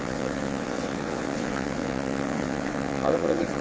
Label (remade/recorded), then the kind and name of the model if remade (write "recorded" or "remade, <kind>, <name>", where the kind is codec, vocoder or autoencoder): remade, vocoder, WaveNeXt